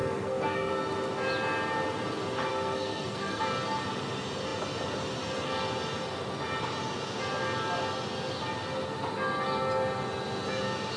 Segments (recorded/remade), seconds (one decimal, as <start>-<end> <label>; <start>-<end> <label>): 0.0-0.7 remade; 0.7-2.5 recorded; 2.5-3.4 remade; 3.4-11.0 recorded